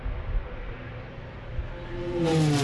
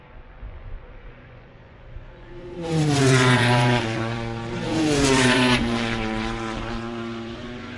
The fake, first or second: second